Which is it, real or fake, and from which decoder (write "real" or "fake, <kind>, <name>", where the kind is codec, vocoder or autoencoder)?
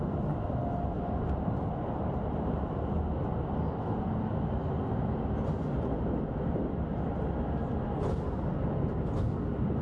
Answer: real